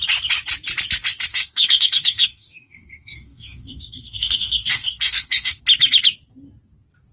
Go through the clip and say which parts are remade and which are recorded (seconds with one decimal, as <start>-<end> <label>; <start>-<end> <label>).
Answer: 0.0-1.3 recorded; 1.3-5.6 remade; 5.6-7.1 recorded

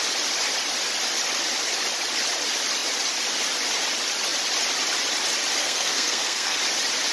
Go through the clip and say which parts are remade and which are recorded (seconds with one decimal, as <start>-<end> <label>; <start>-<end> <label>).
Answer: 0.0-5.6 recorded; 5.6-6.6 remade; 6.6-7.1 recorded